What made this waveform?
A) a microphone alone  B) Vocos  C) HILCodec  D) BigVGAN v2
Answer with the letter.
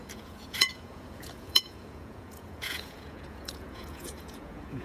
B